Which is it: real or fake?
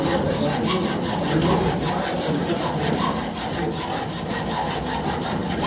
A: real